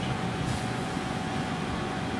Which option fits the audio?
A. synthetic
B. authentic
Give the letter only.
A